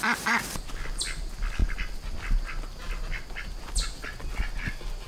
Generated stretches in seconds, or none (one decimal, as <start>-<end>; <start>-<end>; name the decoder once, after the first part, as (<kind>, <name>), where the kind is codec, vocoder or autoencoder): none